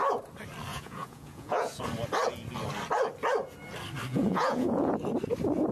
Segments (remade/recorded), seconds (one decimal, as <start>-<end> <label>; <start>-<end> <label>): 0.0-0.7 recorded; 0.7-1.8 remade; 1.8-4.1 recorded; 4.1-4.9 remade; 4.9-5.7 recorded